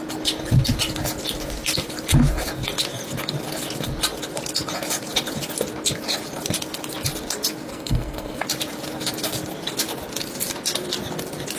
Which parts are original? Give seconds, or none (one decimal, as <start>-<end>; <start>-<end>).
0.0-7.7; 8.4-11.6